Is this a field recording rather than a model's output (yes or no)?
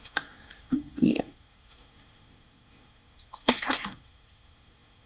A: no